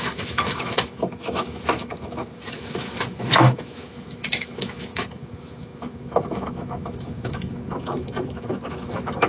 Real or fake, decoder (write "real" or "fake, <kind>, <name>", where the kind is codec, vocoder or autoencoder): fake, autoencoder, DAC-VAE